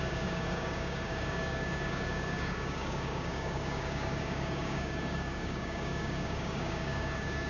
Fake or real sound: fake